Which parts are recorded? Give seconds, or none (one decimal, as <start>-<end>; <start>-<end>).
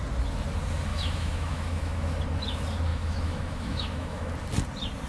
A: 0.0-0.9; 2.1-2.9; 4.3-5.1